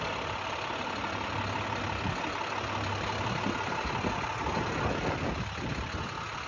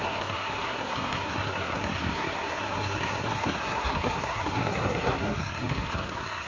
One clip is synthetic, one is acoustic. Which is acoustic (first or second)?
first